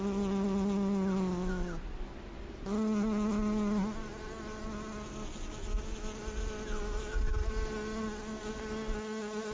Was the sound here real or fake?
real